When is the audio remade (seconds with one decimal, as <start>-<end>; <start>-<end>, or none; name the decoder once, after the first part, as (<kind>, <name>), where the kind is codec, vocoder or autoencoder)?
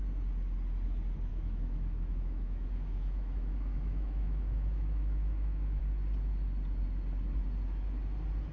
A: 1.3-5.8 (autoencoder, DAC-VAE)